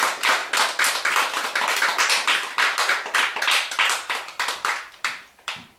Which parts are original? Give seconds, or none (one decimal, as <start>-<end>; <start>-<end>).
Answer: 0.0-0.4; 1.3-1.9